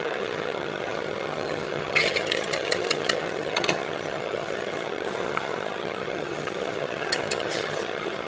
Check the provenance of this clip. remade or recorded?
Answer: remade